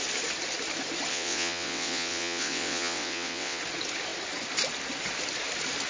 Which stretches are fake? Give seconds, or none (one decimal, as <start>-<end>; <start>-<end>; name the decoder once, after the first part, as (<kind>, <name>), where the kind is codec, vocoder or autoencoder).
1.1-3.6 (vocoder, WaveNeXt)